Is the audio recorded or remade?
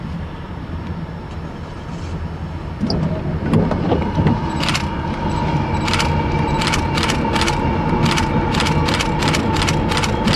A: recorded